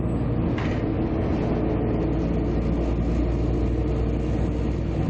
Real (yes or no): yes